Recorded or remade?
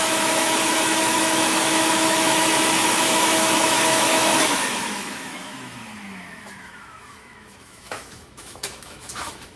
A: remade